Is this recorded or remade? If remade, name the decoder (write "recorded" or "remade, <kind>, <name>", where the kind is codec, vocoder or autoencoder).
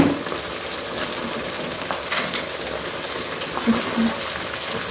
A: recorded